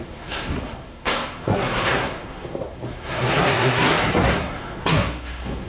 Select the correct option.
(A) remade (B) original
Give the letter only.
A